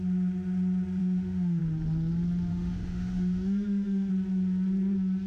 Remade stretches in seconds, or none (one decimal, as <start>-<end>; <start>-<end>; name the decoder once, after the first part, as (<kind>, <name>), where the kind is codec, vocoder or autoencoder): 1.0-1.6 (autoencoder, DAC-VAE); 2.5-4.1